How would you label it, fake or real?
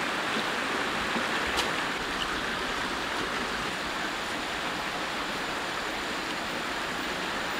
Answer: real